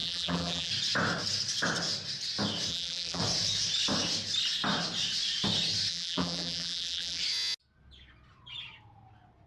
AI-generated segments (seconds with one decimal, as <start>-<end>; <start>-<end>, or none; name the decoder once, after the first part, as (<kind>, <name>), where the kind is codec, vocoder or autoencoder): 0.0-0.7 (vocoder, BigVGAN v2); 2.7-3.2; 5.9-7.2